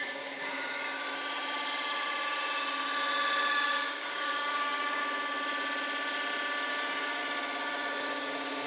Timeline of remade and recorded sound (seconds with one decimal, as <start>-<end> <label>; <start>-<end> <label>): 0.0-0.7 remade; 0.7-3.5 recorded; 3.5-5.0 remade; 5.0-6.7 recorded; 6.7-7.2 remade; 7.2-8.0 recorded; 8.0-8.7 remade